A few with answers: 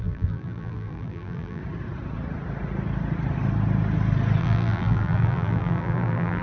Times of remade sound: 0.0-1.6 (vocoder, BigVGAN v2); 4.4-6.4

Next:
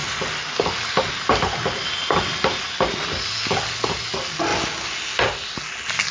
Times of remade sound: 0.0-1.1 (vocoder, BigVGAN v2)

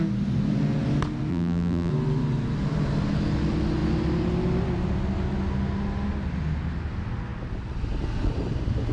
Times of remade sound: 1.3-1.9 (vocoder, BigVGAN v2)

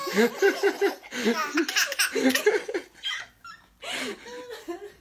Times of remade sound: none